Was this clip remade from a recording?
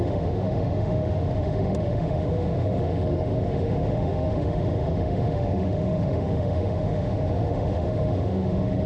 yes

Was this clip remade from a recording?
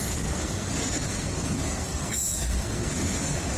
yes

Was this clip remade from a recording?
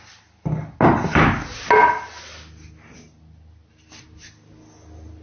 no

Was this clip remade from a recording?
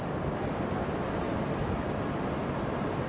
no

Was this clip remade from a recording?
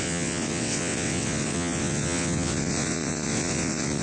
yes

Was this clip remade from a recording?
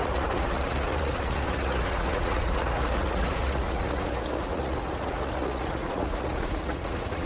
yes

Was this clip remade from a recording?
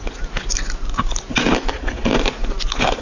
no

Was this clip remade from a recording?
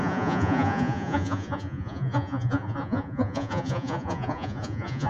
yes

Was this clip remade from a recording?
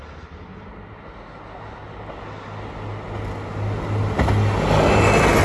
no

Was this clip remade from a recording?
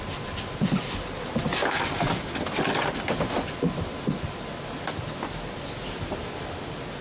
no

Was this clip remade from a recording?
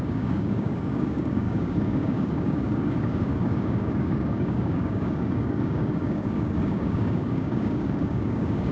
yes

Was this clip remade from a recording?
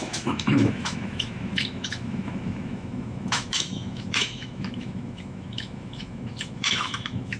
yes